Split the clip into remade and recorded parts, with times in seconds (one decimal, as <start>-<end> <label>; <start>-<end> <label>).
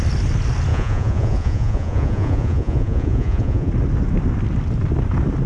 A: 0.0-0.7 recorded; 0.7-3.7 remade; 3.7-5.5 recorded